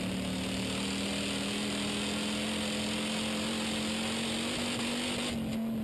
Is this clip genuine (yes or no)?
yes